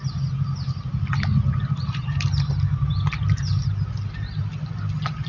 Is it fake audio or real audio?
real